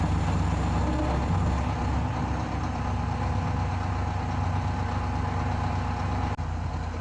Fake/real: real